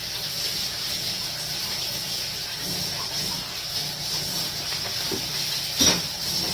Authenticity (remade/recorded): recorded